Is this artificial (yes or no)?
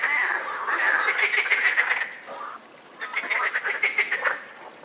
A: no